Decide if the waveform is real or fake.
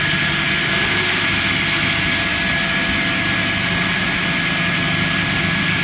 real